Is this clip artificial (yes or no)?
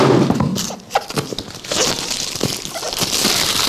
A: no